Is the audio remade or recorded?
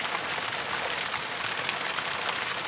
recorded